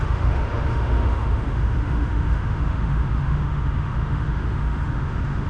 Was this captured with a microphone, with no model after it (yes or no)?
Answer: no